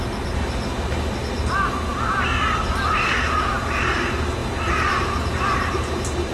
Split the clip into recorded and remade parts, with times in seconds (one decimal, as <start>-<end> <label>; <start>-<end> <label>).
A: 0.0-6.3 recorded